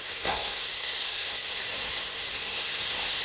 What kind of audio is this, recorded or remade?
remade